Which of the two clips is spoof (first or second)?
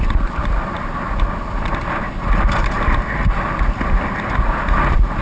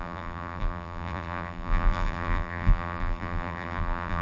second